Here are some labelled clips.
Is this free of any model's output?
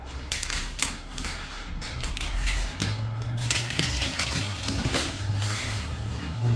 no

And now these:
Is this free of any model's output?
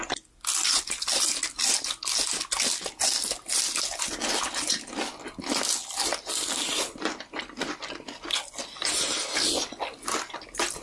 yes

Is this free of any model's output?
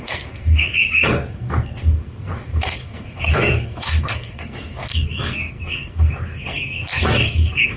no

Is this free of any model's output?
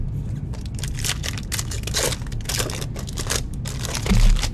yes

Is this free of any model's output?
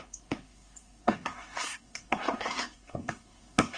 no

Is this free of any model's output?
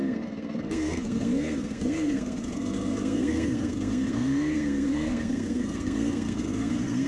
no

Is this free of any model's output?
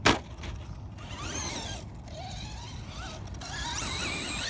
yes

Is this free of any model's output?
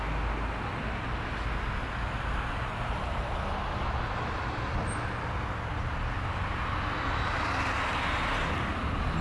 yes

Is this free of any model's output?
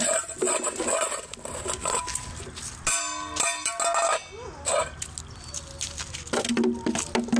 yes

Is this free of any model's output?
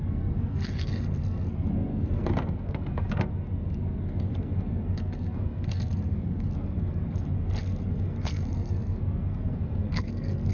no